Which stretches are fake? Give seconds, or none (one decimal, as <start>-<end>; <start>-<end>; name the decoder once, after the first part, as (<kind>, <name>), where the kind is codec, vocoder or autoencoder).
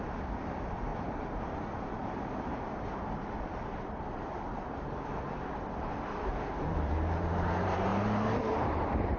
0.0-9.2 (vocoder, BigVGAN v2)